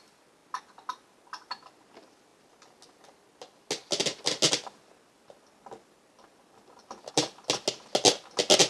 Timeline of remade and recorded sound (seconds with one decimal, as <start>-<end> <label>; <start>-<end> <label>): 0.0-8.7 recorded